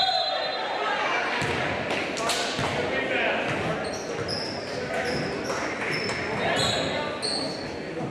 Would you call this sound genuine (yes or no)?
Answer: yes